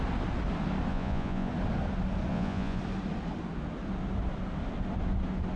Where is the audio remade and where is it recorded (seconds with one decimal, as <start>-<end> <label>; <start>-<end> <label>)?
0.0-0.9 recorded; 0.9-1.5 remade; 1.5-2.3 recorded; 2.3-2.8 remade; 2.8-5.6 recorded